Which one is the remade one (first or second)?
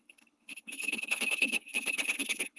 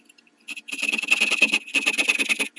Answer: first